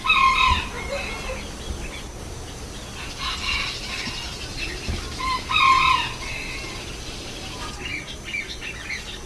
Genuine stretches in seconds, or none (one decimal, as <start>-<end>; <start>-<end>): 0.0-9.3